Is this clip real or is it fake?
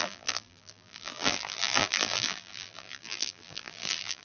fake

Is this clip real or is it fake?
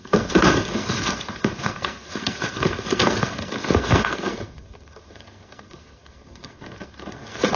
fake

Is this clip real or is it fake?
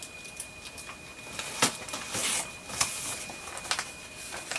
real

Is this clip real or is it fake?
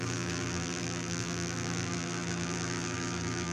fake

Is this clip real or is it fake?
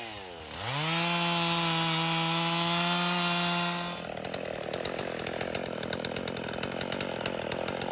real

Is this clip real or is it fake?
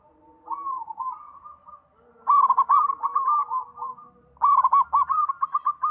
real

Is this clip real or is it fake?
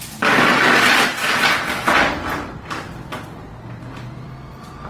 real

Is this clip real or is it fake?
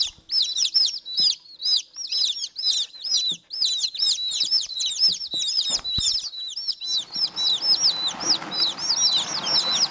real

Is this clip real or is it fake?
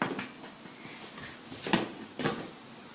real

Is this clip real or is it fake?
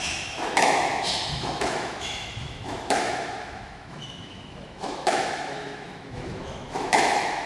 fake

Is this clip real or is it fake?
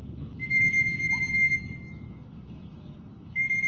fake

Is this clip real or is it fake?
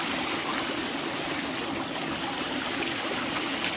real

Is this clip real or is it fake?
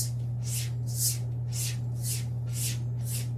real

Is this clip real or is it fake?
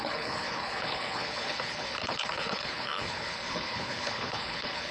fake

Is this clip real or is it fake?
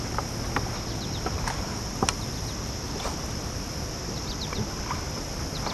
real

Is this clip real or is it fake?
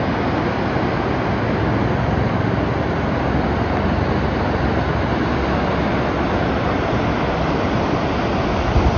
real